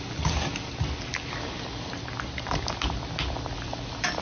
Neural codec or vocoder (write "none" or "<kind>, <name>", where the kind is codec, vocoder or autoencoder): none